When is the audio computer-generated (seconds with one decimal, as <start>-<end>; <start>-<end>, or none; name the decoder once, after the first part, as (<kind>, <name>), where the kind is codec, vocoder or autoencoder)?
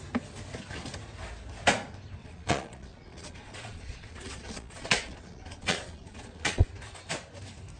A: 2.2-6.7 (vocoder, Vocos)